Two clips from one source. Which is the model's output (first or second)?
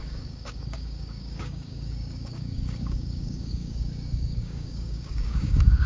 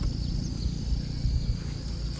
first